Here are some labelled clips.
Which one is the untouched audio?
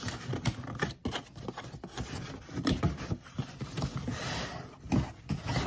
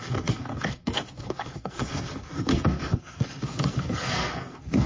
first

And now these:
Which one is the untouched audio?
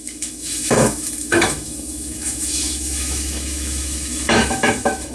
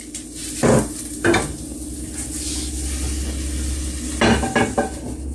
second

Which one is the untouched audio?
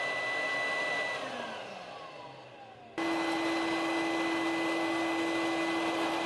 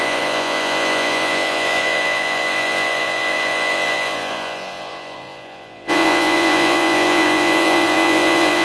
first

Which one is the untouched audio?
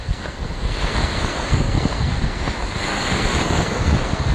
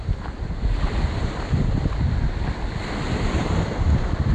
second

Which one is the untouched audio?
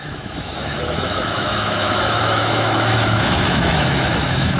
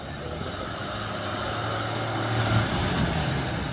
second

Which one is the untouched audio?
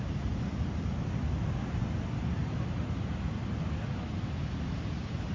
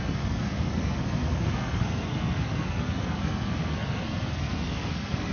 first